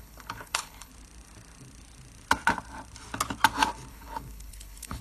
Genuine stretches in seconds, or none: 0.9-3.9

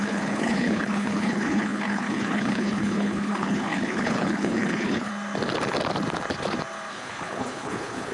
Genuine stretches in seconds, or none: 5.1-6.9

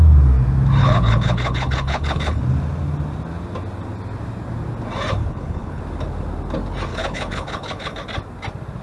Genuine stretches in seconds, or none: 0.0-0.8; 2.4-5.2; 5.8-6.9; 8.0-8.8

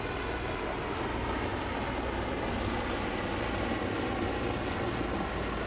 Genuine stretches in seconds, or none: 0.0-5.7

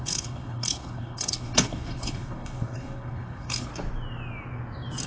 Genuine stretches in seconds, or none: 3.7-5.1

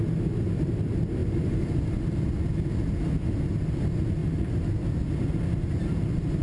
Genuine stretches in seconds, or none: 0.0-6.4